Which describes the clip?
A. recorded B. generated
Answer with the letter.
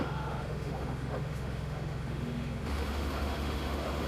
B